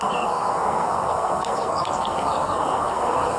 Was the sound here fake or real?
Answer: fake